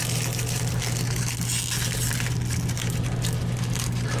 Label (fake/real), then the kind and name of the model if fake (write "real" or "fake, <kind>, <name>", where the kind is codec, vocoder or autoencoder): real